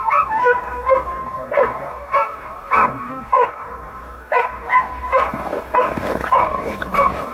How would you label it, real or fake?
fake